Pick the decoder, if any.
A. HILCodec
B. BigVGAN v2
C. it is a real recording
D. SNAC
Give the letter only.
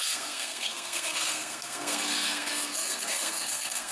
D